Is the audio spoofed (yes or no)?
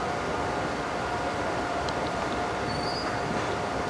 no